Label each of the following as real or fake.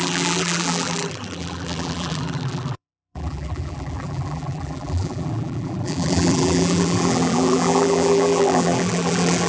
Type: fake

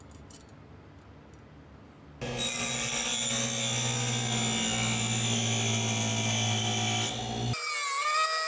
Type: real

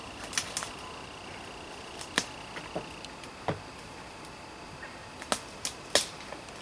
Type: real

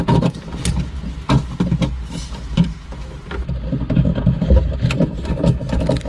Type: real